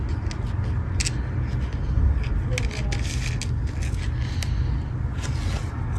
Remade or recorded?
recorded